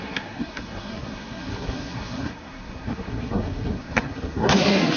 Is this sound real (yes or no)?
no